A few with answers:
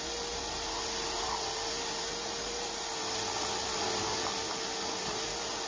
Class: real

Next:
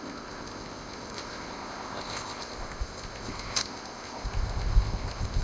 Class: fake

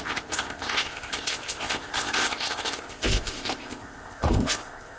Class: fake